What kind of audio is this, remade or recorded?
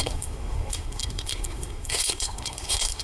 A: remade